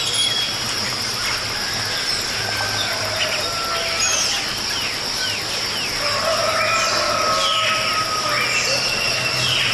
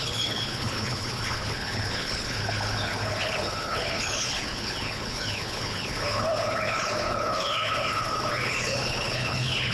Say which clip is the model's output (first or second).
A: second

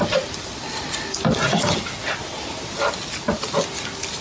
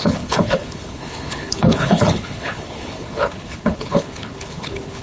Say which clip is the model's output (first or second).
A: second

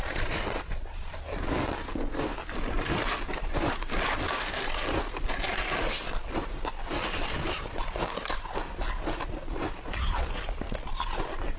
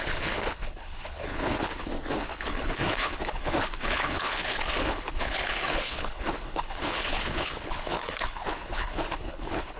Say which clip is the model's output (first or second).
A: second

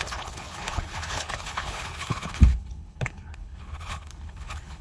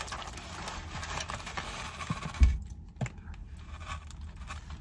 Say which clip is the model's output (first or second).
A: first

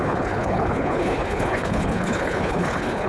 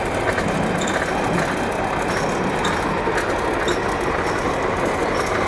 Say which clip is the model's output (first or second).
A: first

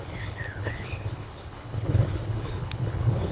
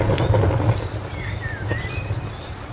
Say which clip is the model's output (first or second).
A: first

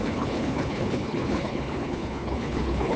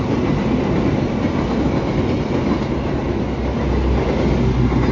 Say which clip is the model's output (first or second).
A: first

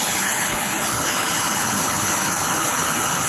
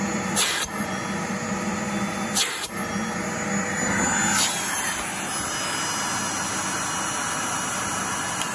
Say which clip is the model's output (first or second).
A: first